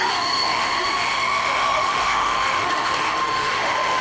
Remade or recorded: remade